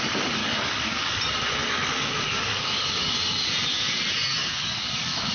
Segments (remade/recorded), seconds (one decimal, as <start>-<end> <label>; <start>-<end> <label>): 0.0-0.4 recorded; 0.4-1.2 remade; 1.2-1.6 recorded; 1.6-3.1 remade; 3.1-4.4 recorded; 4.4-5.3 remade